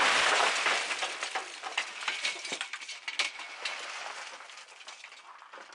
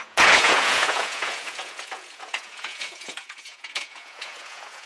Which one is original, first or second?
first